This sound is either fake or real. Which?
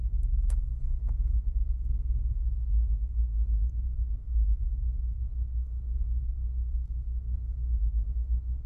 fake